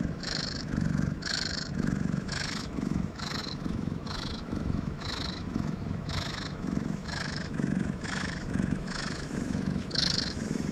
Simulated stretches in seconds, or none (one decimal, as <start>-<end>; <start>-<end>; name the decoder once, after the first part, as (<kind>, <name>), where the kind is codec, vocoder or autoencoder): 0.0-10.7 (autoencoder, DAC-VAE)